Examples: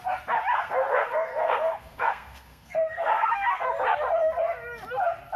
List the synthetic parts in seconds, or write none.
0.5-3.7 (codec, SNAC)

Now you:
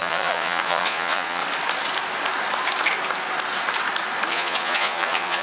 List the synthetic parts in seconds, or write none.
0.0-1.4 (vocoder, Vocos); 4.3-5.4

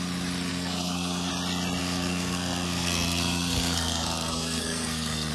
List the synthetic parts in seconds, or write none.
0.5-1.3 (codec, SNAC); 1.8-5.3

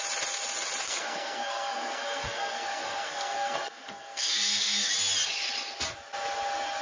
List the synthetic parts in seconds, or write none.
0.8-4.9 (codec, SNAC)

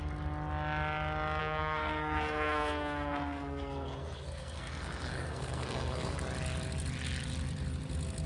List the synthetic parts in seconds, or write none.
1.4-6.2 (codec, SNAC)

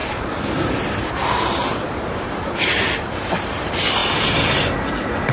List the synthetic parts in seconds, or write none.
0.0-1.1 (vocoder, BigVGAN v2); 1.6-3.5

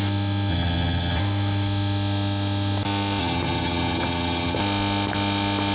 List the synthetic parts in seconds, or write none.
0.5-1.2 (vocoder, HiFi-GAN); 3.2-4.6

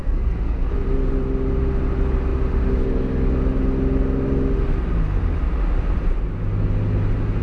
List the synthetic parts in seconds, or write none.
0.0-0.7 (codec, SNAC)